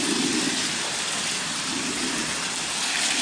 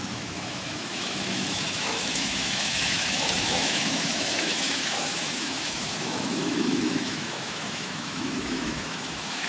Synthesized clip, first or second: second